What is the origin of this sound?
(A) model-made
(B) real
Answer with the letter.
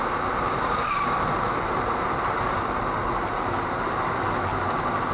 B